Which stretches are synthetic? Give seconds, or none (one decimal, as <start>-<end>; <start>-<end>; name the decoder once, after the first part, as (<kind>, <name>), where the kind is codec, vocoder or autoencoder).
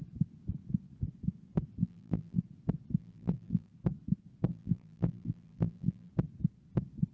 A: 1.8-2.4 (vocoder, BigVGAN v2); 3.0-3.7; 4.5-6.1